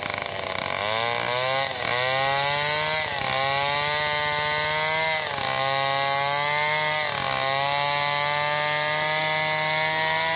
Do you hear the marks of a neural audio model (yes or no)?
no